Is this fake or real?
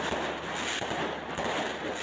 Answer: real